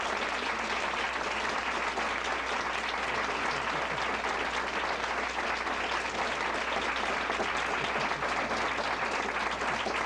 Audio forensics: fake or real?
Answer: real